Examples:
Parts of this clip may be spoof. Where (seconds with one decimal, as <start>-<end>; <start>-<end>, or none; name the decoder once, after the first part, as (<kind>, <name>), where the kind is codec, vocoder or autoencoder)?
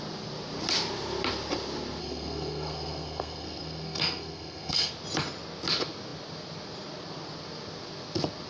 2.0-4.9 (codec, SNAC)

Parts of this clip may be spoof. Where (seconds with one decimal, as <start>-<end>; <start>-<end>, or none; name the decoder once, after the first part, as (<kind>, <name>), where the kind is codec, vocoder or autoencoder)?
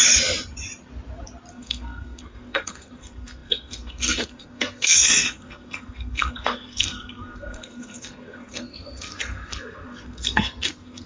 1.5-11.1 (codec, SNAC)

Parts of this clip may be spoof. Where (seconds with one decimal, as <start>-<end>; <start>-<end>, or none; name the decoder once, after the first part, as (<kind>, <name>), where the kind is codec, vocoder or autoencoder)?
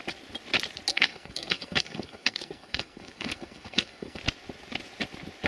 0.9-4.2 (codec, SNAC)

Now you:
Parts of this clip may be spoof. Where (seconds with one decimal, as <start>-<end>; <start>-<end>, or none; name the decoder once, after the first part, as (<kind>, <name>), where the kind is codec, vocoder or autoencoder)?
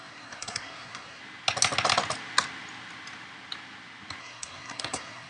0.0-1.2 (codec, SNAC); 4.2-5.3